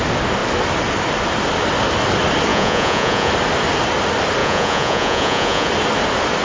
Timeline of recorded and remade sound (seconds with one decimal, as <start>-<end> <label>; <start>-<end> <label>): 0.0-2.5 recorded; 2.5-3.3 remade; 3.3-4.4 recorded; 4.4-5.7 remade; 5.7-6.4 recorded